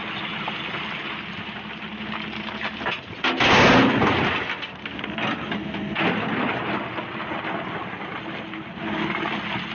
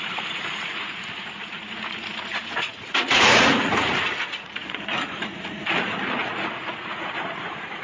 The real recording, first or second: first